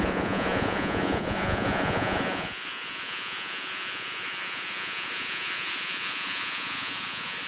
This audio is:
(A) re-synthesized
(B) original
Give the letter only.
A